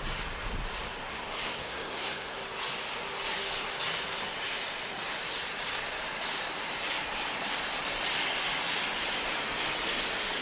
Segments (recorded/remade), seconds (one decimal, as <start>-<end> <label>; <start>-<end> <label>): 0.0-1.0 recorded; 1.0-2.4 remade; 2.4-10.4 recorded